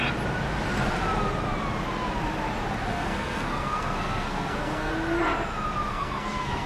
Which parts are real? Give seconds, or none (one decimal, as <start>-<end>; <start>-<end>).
0.0-2.9; 4.9-5.9